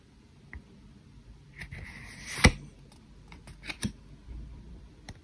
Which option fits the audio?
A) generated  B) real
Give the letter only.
A